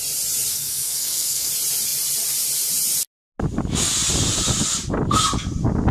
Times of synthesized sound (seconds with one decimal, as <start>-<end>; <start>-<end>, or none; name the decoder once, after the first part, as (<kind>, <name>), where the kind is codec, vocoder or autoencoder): 0.5-1.5 (codec, SNAC)